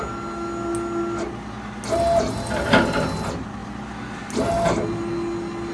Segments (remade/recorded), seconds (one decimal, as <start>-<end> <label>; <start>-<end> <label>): 0.0-5.7 recorded